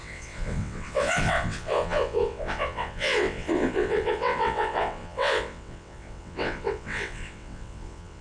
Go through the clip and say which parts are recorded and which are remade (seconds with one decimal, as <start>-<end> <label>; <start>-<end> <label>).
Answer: 0.0-8.2 remade